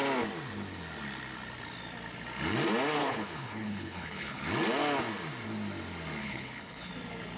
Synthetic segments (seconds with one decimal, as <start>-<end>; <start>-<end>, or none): 3.0-4.4; 6.2-6.9